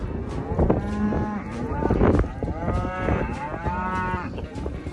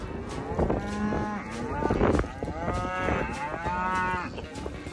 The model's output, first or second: first